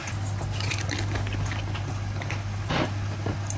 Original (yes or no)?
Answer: yes